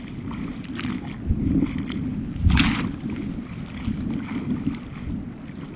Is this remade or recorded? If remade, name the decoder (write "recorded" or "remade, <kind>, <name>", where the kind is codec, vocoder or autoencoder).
recorded